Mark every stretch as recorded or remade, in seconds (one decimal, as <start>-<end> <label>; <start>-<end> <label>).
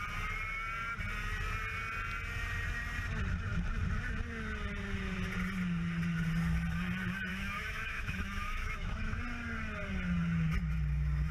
0.0-7.3 recorded; 7.3-9.2 remade; 9.2-11.3 recorded